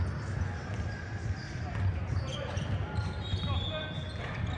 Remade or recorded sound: recorded